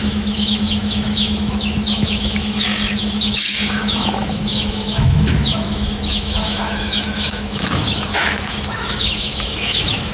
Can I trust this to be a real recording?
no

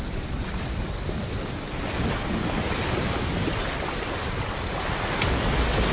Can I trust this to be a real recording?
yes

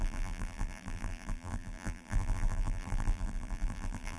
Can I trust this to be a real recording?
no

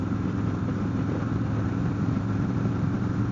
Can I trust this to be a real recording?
no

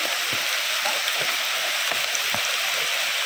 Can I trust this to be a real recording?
yes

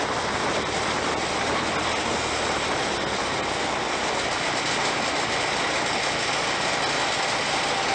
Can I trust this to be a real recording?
yes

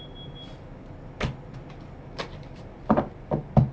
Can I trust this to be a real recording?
yes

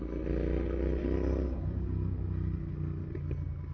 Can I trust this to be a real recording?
yes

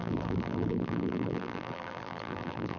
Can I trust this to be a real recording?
no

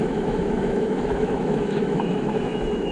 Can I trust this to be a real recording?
no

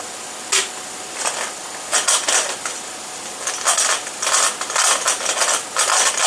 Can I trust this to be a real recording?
yes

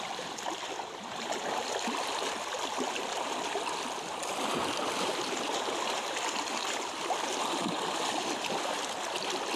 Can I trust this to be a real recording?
yes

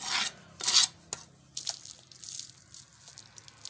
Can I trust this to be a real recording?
yes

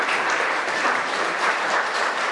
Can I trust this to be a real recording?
no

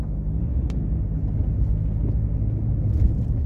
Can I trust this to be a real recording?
yes